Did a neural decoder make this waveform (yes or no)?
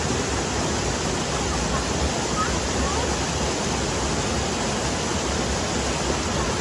no